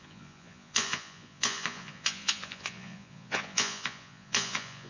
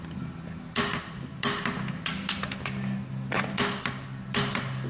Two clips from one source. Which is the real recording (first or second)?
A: second